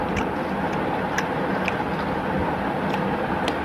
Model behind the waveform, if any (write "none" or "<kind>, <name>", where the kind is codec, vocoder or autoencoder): none